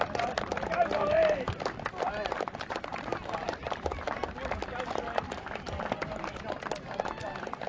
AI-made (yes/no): no